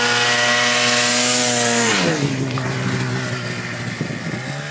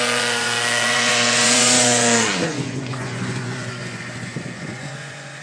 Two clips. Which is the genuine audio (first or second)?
first